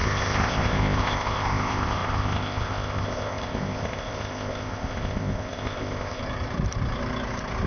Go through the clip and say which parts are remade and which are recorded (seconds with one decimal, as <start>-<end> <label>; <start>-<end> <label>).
0.0-6.2 remade; 6.2-7.7 recorded